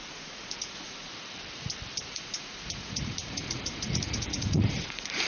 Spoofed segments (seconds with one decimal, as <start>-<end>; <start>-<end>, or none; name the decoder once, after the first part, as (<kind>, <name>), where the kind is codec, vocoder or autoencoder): 0.0-1.1 (vocoder, Vocos); 2.1-5.3